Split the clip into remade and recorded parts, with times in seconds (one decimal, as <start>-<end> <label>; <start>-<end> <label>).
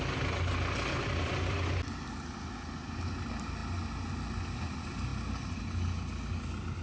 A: 0.0-6.8 recorded